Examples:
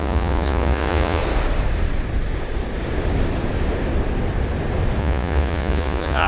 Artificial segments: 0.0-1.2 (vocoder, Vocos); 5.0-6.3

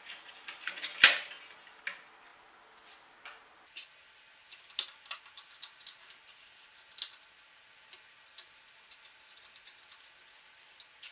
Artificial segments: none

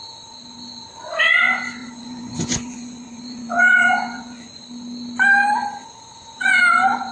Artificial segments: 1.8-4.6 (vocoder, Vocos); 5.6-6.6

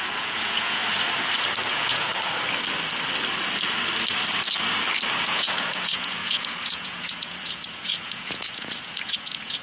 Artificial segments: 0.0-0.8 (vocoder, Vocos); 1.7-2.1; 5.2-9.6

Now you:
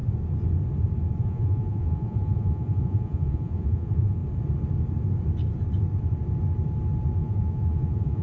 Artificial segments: 1.2-4.2 (vocoder, Vocos); 7.2-8.2

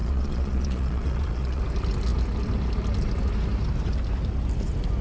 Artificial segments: 0.0-1.6 (vocoder, Vocos)